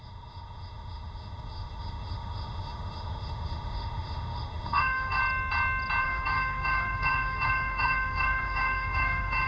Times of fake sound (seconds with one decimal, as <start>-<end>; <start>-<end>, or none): 0.0-5.2; 6.0-9.5